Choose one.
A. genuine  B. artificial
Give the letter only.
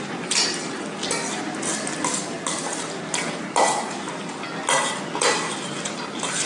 A